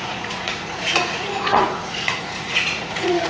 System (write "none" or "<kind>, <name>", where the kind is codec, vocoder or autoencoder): vocoder, Vocos